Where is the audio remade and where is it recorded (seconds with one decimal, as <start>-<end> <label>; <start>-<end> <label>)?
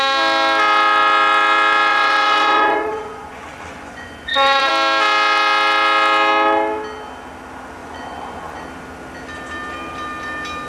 0.0-1.9 recorded; 1.9-4.7 remade; 4.7-7.8 recorded; 7.8-8.6 remade; 8.6-10.7 recorded